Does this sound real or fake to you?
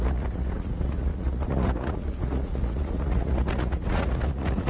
fake